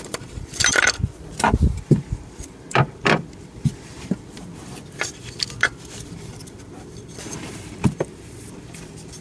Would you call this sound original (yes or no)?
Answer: no